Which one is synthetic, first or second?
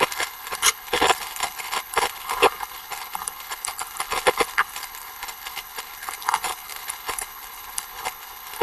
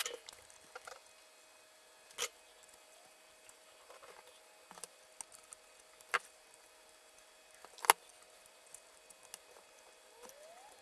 first